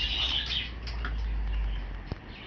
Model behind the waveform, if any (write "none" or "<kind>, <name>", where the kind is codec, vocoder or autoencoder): none